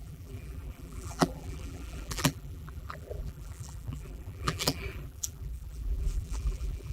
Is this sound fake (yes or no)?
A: yes